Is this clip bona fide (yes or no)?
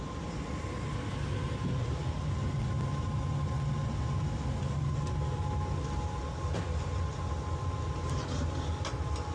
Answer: yes